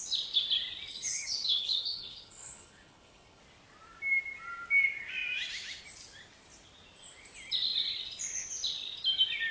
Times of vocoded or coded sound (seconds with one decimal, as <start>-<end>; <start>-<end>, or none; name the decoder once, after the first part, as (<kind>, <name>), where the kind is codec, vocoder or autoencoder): 0.9-3.4 (codec, HILCodec)